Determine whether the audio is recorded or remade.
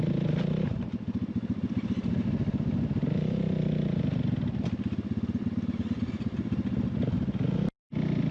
recorded